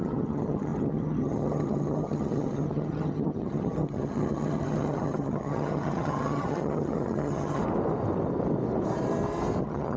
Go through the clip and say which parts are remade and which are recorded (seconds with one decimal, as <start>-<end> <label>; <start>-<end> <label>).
0.0-7.6 remade; 7.6-9.6 recorded; 9.6-10.0 remade